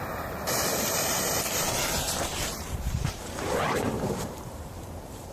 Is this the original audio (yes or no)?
no